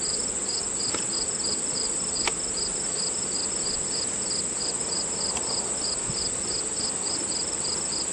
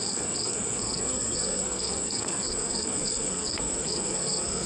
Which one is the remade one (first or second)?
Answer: second